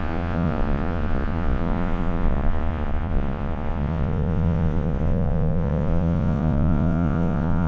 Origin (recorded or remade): remade